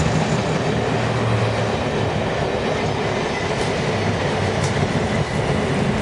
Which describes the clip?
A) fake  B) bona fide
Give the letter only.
B